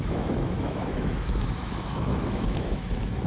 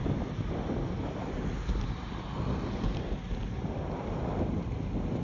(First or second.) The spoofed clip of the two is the first